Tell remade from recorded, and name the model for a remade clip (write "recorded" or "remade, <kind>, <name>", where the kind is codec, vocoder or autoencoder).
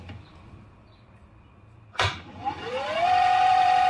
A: remade, vocoder, BigVGAN v2